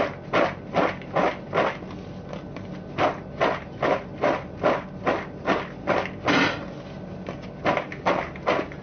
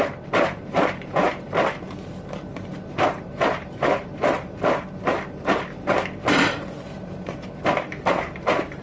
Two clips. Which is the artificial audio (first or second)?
second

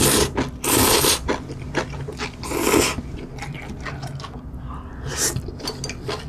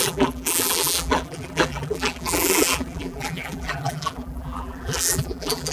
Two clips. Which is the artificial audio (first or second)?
second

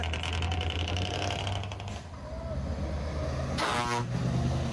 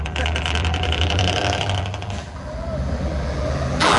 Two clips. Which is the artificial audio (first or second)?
second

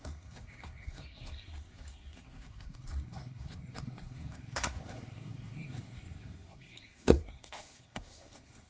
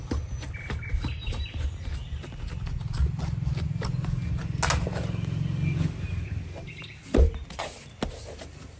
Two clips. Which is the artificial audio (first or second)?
first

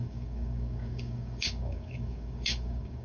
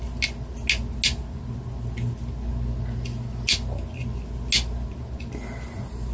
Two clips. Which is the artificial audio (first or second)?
first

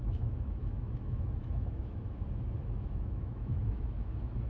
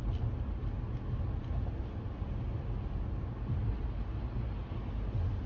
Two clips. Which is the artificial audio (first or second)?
first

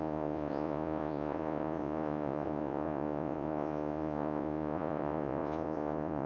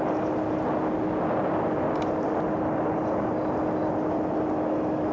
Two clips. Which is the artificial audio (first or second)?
first